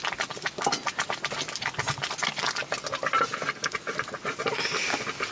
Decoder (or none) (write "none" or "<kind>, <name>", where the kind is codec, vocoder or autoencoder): none